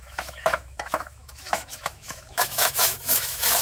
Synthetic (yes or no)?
yes